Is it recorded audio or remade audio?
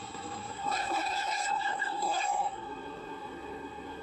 remade